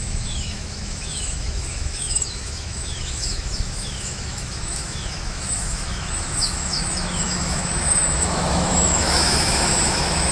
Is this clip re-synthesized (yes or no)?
yes